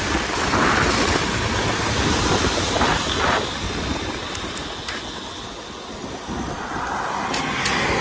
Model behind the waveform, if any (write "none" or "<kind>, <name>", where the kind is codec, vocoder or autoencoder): none